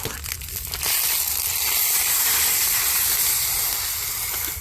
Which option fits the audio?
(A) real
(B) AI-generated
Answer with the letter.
A